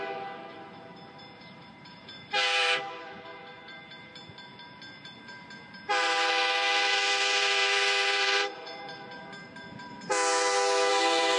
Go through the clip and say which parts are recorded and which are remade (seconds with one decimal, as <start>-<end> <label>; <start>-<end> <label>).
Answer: 0.0-10.1 remade; 10.1-10.9 recorded; 10.9-11.4 remade